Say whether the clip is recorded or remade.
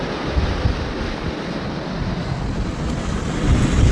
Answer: recorded